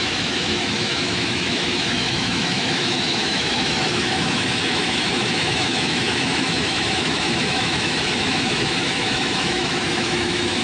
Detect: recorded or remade remade